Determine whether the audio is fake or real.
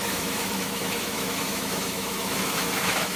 fake